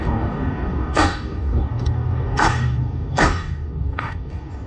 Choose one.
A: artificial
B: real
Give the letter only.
A